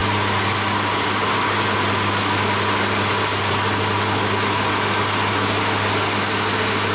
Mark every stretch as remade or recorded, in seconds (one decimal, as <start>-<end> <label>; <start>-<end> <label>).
0.0-6.9 recorded